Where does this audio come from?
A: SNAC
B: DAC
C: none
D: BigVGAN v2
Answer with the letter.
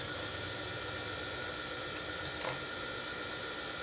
C